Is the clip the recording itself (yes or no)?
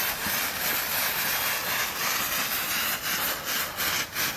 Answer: yes